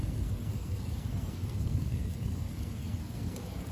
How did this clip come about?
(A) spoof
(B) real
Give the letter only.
A